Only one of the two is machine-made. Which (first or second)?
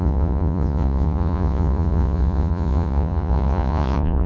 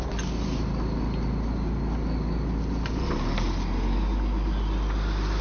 first